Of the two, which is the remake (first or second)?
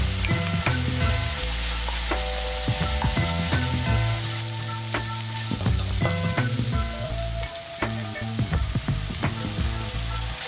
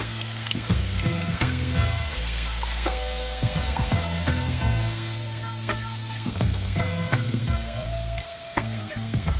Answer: second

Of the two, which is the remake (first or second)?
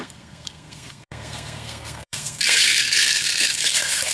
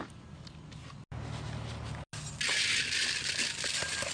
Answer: first